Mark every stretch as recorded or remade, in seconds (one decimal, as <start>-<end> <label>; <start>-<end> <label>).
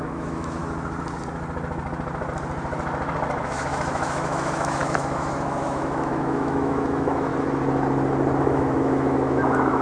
0.0-0.6 remade; 0.6-3.4 recorded; 3.4-7.3 remade; 7.3-8.4 recorded; 8.4-9.8 remade